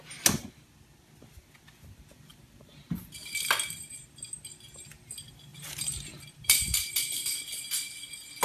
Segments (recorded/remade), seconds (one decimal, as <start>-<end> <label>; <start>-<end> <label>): 0.0-5.5 recorded; 5.5-6.9 remade; 6.9-8.4 recorded